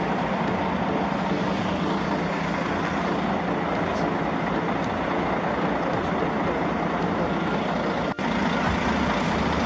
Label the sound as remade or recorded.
recorded